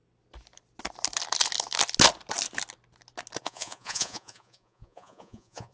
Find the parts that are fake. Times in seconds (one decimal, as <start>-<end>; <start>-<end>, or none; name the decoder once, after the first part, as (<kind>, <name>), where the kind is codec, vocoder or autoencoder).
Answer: 3.4-5.7 (vocoder, Vocos)